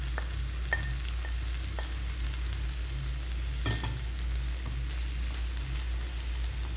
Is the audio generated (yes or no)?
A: no